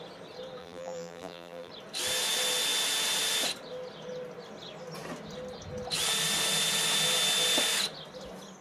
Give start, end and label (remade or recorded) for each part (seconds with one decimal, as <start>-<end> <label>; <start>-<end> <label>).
0.0-0.6 recorded; 0.6-1.7 remade; 1.7-8.6 recorded